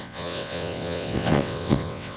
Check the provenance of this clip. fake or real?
fake